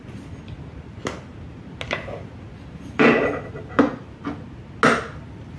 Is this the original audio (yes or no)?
yes